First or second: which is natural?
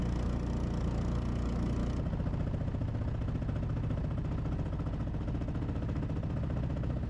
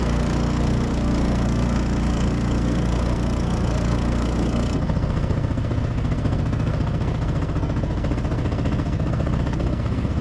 first